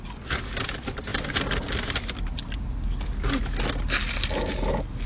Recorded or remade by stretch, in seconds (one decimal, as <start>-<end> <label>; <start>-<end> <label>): 0.0-5.1 recorded